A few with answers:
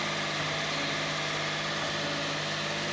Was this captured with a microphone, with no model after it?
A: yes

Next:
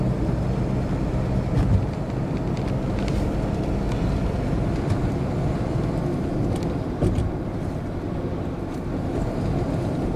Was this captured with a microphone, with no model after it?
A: yes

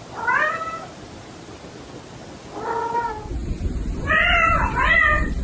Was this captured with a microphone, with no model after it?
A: yes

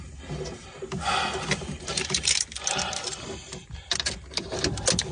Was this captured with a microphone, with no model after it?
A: yes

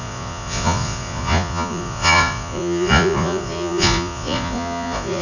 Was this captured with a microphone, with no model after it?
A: no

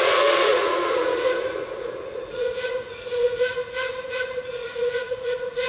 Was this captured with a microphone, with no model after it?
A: no